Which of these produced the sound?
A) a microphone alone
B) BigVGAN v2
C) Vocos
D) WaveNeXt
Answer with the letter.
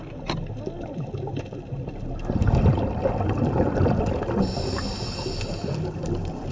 A